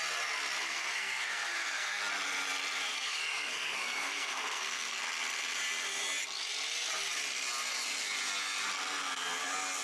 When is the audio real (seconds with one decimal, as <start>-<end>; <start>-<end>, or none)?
0.0-0.6; 2.0-2.9; 5.0-9.8